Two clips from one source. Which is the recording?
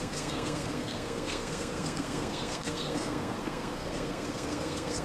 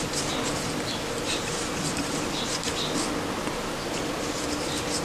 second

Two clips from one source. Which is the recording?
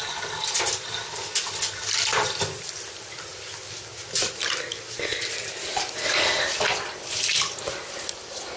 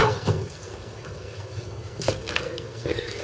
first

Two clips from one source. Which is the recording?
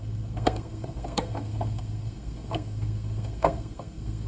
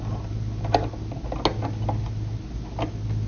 second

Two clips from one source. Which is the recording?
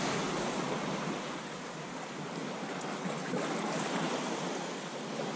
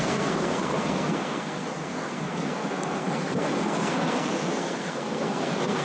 first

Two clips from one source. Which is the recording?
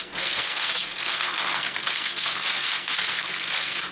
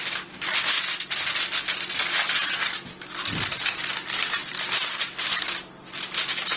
second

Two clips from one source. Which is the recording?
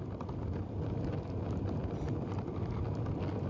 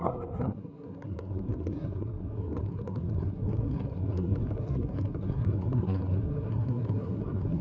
first